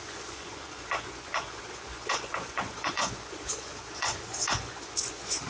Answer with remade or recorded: remade